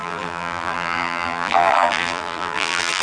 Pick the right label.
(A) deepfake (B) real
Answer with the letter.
A